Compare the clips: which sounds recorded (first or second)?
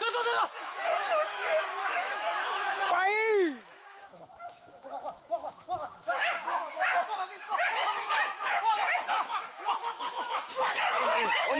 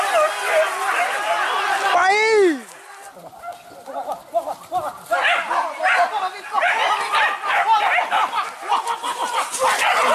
second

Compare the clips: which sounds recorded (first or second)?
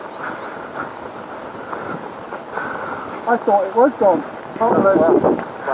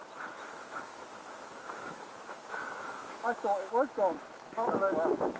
first